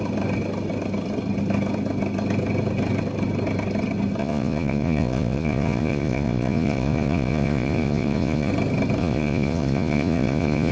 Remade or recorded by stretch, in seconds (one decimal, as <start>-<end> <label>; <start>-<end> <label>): 0.0-4.2 recorded; 4.2-8.5 remade; 8.5-9.0 recorded; 9.0-10.7 remade